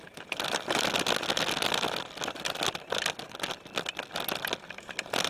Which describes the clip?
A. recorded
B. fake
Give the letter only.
A